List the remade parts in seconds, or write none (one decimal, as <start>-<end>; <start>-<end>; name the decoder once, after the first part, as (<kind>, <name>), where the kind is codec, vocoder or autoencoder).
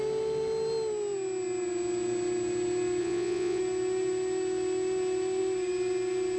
3.0-3.6 (vocoder, Vocos)